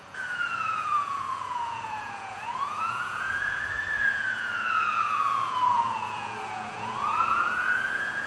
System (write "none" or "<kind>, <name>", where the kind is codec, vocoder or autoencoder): vocoder, Vocos